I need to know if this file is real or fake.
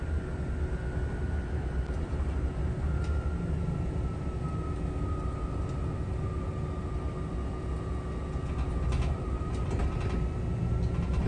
real